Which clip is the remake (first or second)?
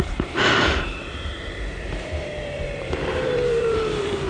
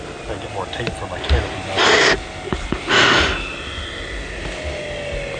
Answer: first